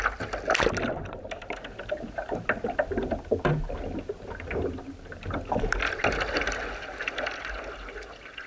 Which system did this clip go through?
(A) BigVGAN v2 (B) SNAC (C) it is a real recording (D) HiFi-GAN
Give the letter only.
C